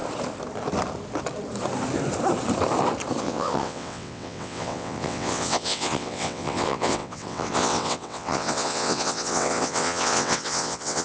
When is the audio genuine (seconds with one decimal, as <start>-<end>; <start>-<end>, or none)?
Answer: 0.0-3.2